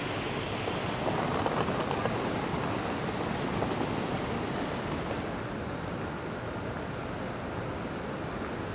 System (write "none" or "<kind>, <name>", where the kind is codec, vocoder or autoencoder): none